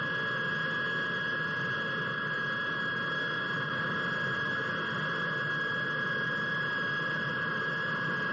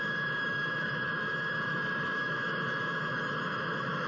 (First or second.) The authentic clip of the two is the first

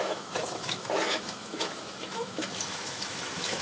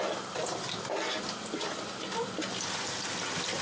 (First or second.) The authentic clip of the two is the second